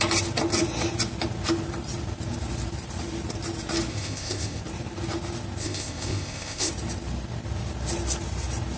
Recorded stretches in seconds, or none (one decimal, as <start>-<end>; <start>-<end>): 0.0-3.9; 4.6-5.6; 6.7-8.8